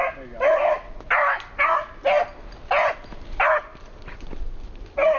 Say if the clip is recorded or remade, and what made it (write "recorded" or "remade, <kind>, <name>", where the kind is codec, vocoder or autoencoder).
recorded